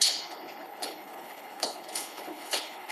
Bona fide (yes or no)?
no